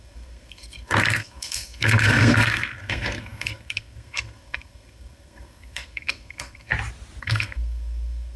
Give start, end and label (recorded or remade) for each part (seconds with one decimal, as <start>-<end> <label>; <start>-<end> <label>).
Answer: 0.0-6.7 remade; 6.7-7.2 recorded; 7.2-8.4 remade